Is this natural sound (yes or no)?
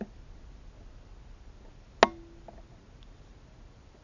yes